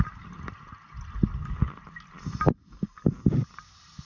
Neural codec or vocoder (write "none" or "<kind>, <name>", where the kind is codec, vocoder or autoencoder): none